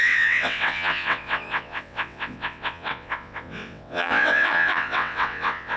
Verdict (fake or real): fake